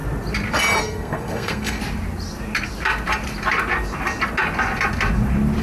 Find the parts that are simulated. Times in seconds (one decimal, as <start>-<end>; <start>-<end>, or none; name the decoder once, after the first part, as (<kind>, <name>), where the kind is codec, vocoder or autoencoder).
0.8-1.8 (codec, SNAC)